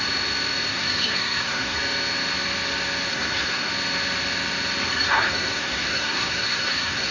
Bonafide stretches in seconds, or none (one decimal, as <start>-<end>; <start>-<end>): 0.0-0.7; 1.8-3.1; 3.7-4.9

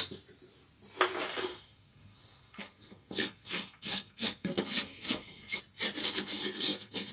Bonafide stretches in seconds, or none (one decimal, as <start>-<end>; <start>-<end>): 0.0-1.3; 5.6-6.0

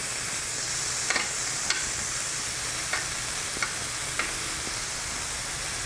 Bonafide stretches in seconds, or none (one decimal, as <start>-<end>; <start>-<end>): none

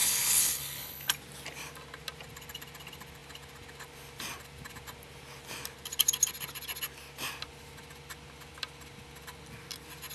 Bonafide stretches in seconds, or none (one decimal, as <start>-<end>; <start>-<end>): 1.1-10.1

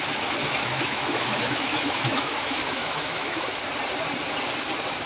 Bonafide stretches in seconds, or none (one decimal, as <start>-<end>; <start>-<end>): 0.0-0.4; 3.5-5.1

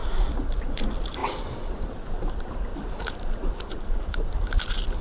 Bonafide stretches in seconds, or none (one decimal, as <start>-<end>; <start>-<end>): 0.0-2.7; 4.4-5.0

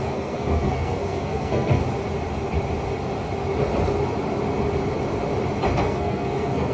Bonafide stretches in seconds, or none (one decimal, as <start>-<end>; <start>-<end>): 1.8-5.8

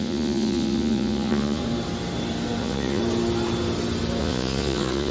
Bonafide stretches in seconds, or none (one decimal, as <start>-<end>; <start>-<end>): 1.6-2.6; 3.0-4.2